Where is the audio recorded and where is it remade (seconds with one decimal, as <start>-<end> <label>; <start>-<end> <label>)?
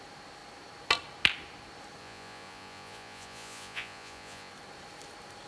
0.0-2.0 recorded; 2.0-4.5 remade; 4.5-5.5 recorded